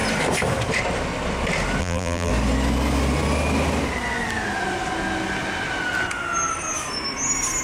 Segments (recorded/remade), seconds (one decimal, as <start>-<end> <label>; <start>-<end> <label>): 0.0-1.8 recorded; 1.8-2.3 remade; 2.3-7.6 recorded